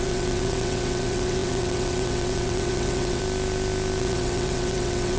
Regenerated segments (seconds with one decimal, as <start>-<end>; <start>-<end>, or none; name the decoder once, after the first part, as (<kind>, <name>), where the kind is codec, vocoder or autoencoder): 0.0-3.2 (vocoder, WaveNeXt); 4.0-5.2